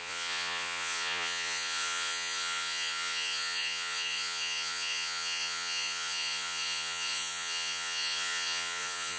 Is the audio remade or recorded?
remade